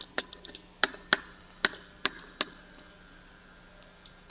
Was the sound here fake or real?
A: real